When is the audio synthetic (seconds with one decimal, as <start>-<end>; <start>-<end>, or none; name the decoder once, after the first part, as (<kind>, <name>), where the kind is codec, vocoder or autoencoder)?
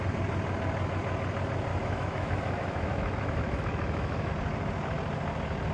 1.7-4.3 (autoencoder, DAC-VAE)